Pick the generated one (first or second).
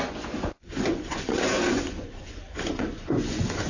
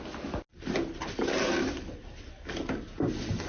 first